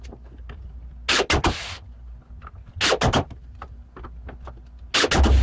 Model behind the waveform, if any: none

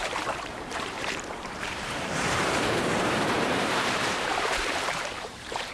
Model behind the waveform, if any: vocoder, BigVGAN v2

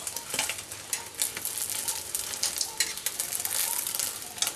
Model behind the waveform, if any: none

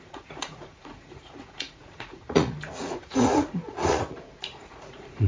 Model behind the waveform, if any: vocoder, Vocos